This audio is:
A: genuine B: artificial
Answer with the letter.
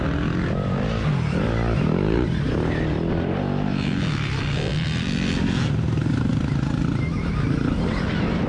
A